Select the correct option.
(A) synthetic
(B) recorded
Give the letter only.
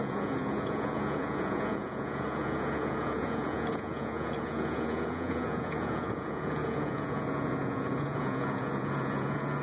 A